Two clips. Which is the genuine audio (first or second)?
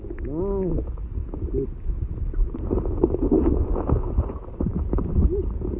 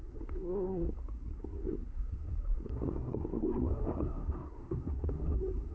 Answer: first